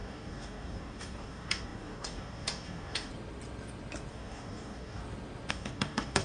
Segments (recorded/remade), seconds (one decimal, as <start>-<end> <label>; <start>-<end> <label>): 0.0-3.1 remade; 3.1-4.1 recorded; 4.1-5.0 remade; 5.0-5.5 recorded; 5.5-6.2 remade